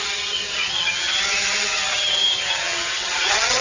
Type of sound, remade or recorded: remade